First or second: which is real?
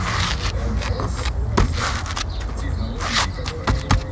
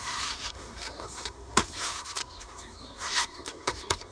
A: first